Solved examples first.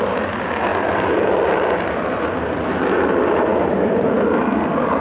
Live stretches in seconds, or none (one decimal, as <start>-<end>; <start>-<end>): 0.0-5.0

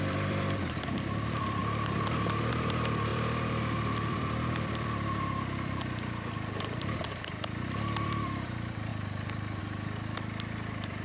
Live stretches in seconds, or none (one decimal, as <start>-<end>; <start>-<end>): 1.6-2.5

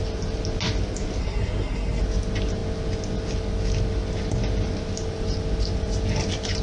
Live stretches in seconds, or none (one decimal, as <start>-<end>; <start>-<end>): 0.0-1.2; 2.0-6.6

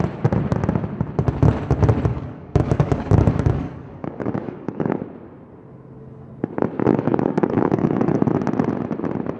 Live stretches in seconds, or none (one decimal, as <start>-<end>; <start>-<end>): 0.0-2.1; 5.0-6.9; 8.2-9.4

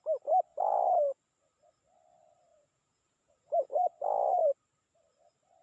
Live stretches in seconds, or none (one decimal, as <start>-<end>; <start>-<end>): 0.0-0.5; 1.2-2.5; 4.5-5.6

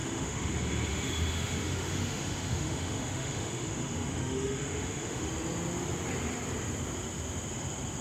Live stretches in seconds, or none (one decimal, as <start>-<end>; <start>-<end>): 0.5-0.9; 5.3-8.0

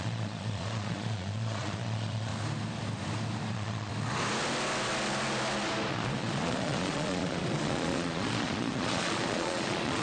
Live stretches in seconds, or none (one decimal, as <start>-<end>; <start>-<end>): 2.3-3.5; 3.9-5.9

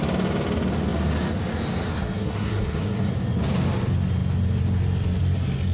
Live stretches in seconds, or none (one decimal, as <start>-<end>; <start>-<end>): 0.0-1.9; 3.1-5.7